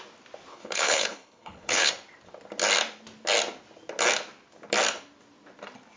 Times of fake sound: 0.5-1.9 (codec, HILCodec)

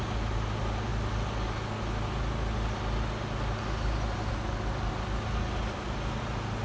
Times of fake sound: none

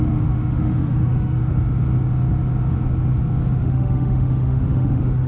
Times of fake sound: 0.0-1.4 (autoencoder, DAC-VAE); 3.6-5.3

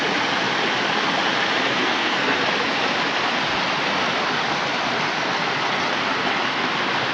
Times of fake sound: 1.7-2.4 (codec, SNAC)

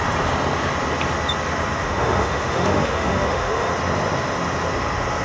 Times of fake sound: 1.8-3.7 (autoencoder, DAC-VAE)

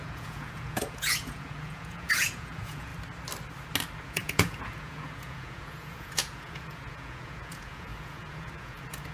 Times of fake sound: 0.0-2.9 (vocoder, Vocos); 4.0-9.1